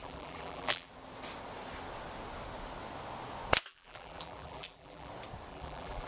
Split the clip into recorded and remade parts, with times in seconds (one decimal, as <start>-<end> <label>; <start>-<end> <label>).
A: 0.0-0.9 remade; 0.9-3.7 recorded; 3.7-5.1 remade; 5.1-5.5 recorded; 5.5-6.1 remade